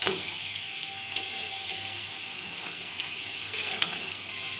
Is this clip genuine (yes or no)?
no